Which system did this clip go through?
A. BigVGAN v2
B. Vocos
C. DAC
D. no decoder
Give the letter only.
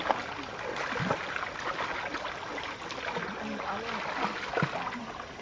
D